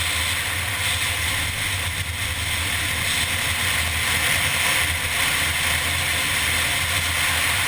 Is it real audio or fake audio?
real